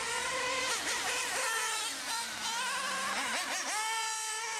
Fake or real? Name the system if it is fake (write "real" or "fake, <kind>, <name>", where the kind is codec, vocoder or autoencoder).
fake, vocoder, BigVGAN v2